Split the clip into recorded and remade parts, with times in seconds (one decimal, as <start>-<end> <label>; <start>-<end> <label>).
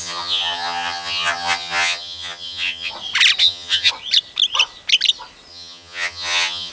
0.0-2.9 remade; 2.9-3.4 recorded; 3.4-3.9 remade; 3.9-5.5 recorded; 5.5-6.7 remade